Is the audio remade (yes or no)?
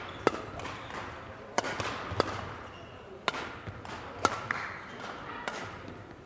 no